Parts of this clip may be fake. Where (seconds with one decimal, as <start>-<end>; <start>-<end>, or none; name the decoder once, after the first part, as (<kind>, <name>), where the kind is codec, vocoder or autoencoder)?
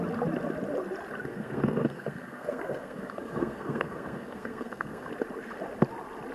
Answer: 1.3-5.1 (codec, SNAC)